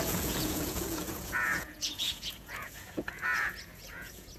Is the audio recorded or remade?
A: remade